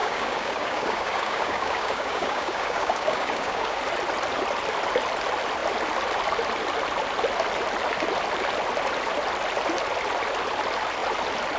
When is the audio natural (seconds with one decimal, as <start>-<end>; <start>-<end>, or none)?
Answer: 3.8-11.6